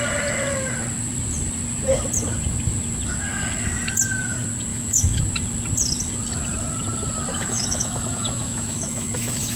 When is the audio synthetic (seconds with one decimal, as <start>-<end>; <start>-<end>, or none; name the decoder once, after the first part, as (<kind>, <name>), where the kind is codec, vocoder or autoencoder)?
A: 4.7-5.2 (autoencoder, DAC-VAE); 7.3-9.6